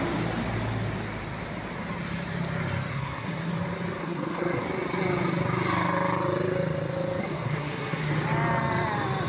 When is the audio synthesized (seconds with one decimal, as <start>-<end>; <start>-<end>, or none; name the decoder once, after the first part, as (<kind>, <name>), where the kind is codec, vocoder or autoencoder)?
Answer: 2.9-3.5 (codec, SNAC); 4.0-4.6; 7.2-8.1

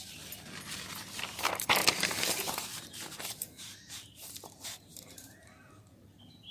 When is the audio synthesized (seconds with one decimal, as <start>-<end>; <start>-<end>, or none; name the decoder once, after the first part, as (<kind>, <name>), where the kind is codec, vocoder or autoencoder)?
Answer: 1.8-5.7 (vocoder, BigVGAN v2)

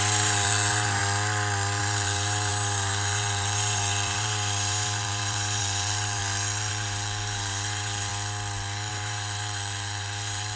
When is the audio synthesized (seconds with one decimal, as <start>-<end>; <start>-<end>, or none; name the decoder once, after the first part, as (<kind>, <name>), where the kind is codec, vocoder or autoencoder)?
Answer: 0.0-1.0 (vocoder, BigVGAN v2); 1.8-6.2; 6.7-8.1; 8.9-10.6

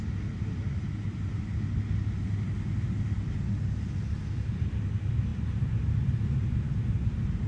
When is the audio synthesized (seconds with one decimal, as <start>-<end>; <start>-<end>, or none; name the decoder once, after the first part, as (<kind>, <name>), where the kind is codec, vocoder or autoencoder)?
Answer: 5.3-5.9 (vocoder, BigVGAN v2)